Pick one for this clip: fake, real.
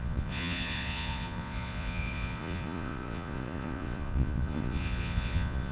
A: fake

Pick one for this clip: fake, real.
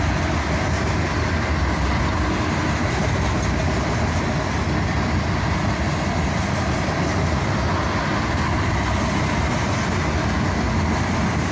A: real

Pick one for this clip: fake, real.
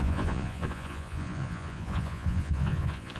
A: fake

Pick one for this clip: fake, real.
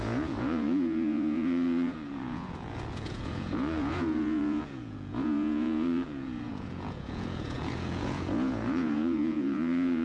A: fake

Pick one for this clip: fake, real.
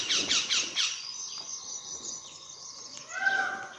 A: fake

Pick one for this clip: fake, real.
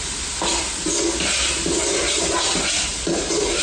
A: real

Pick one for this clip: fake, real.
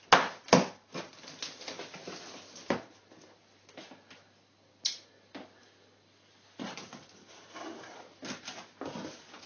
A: real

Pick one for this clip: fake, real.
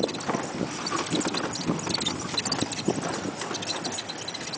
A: real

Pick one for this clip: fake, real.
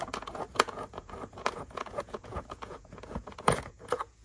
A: fake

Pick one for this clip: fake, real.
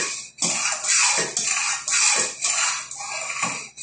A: real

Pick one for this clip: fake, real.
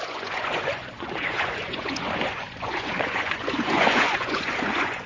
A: fake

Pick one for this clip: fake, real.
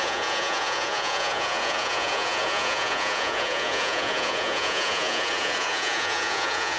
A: fake